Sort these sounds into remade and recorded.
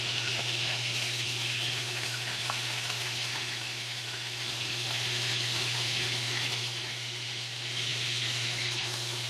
remade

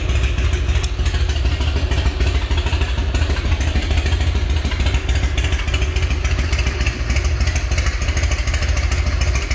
recorded